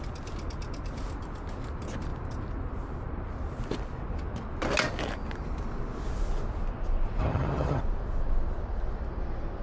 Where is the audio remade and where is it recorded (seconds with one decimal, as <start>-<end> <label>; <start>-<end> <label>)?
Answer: 0.0-7.2 recorded; 7.2-7.8 remade; 7.8-9.6 recorded

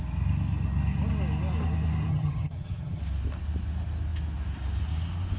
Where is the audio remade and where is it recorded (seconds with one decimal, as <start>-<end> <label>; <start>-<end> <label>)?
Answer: 0.0-2.1 recorded; 2.1-3.0 remade; 3.0-5.4 recorded

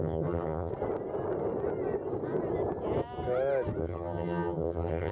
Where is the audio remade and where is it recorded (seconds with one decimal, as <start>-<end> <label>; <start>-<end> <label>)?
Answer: 0.0-0.7 remade; 0.7-3.8 recorded; 3.8-5.1 remade